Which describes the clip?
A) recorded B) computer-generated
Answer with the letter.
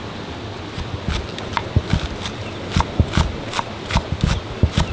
A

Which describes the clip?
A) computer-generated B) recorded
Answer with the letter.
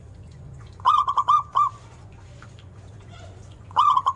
A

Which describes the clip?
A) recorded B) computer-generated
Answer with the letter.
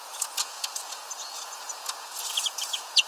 B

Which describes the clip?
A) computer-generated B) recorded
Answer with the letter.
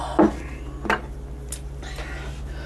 B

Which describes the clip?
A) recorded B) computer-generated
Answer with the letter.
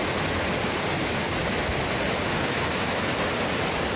A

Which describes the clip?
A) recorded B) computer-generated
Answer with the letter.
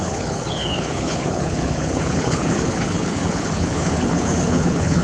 B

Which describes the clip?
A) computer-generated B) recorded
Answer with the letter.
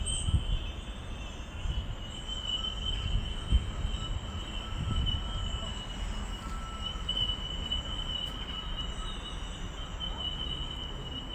B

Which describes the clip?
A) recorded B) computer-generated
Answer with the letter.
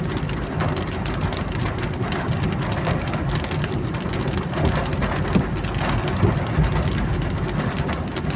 A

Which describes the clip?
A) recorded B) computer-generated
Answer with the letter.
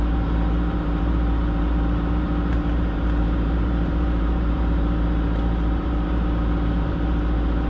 B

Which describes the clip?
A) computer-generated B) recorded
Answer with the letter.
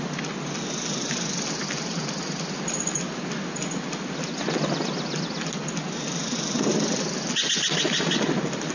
B